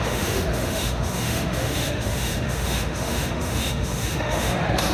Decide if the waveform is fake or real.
fake